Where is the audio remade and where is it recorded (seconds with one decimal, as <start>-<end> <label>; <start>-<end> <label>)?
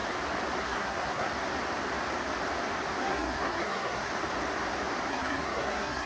0.0-0.6 recorded; 0.6-1.3 remade; 1.3-3.0 recorded; 3.0-4.1 remade; 4.1-5.1 recorded; 5.1-6.1 remade